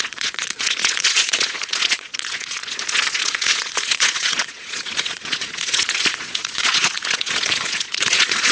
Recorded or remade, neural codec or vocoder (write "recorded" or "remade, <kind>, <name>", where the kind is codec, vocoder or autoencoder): remade, vocoder, Vocos